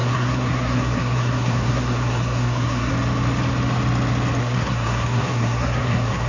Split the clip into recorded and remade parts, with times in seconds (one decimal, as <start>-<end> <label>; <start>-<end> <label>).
0.0-2.9 remade; 2.9-4.4 recorded; 4.4-6.3 remade